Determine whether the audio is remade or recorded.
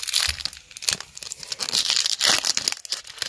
recorded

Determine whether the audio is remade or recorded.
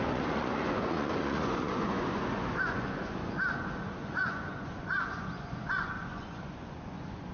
remade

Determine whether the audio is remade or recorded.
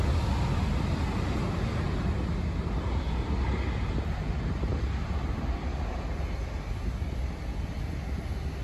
recorded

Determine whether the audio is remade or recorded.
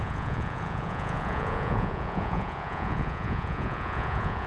remade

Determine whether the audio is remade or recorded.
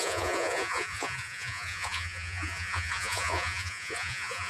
remade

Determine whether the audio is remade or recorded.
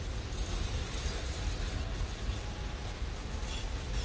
recorded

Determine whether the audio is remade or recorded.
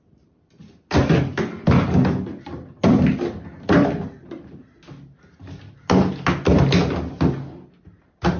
recorded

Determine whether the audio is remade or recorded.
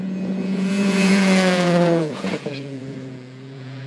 remade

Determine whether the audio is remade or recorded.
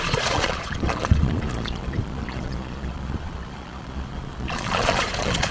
remade